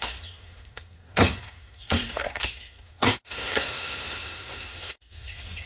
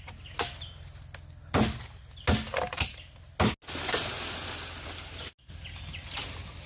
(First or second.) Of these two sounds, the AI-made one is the first